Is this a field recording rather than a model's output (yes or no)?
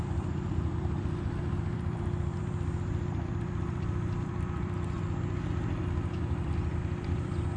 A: no